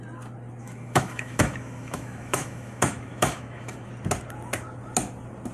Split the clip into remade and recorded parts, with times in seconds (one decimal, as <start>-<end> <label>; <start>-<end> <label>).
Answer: 0.0-0.6 recorded; 0.6-3.9 remade; 3.9-5.5 recorded